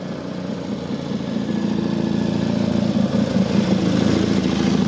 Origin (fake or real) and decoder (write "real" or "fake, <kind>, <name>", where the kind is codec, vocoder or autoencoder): real